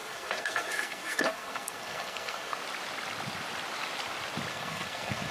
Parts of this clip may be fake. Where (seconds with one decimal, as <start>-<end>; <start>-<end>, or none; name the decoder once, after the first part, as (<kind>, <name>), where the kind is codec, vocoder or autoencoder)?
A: 0.0-2.6 (codec, SNAC); 4.5-5.3